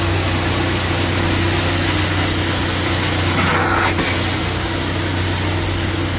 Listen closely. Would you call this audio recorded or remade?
recorded